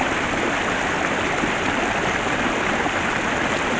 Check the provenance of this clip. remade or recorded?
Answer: recorded